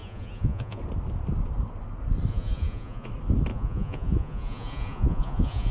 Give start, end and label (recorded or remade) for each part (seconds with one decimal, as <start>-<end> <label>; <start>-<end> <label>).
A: 0.0-0.8 remade; 0.8-2.3 recorded; 2.3-3.1 remade; 3.1-3.5 recorded; 3.5-5.7 remade